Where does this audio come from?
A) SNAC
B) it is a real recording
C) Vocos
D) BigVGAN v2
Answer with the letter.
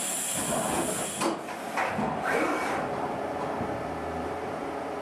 D